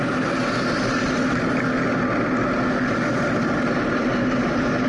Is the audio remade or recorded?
recorded